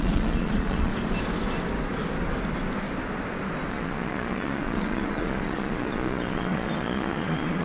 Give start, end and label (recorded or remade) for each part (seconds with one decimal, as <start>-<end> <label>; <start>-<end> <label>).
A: 0.0-0.9 remade; 0.9-3.7 recorded; 3.7-7.6 remade